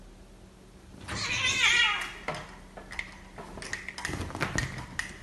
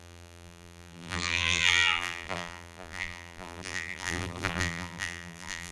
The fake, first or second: second